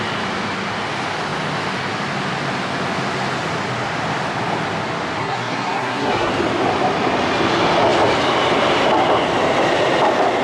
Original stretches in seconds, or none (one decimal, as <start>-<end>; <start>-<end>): 0.0-5.2; 6.3-10.4